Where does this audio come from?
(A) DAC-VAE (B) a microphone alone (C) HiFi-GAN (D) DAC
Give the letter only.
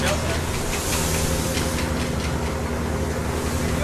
B